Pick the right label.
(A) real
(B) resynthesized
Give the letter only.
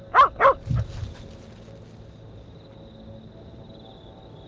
A